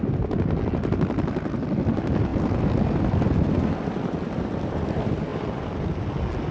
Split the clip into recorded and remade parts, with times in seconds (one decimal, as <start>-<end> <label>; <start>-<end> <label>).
0.0-6.5 recorded